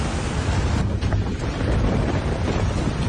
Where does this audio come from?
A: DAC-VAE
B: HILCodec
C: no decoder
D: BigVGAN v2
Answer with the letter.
C